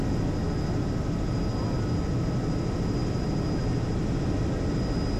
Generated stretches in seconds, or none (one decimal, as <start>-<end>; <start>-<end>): none